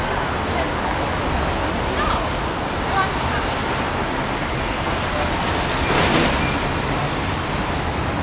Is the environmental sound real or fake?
real